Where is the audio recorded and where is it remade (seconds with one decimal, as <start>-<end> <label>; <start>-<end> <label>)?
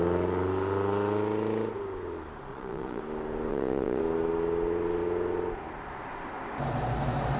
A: 0.0-2.5 recorded; 2.5-3.0 remade; 3.0-3.5 recorded; 3.5-4.0 remade; 4.0-7.4 recorded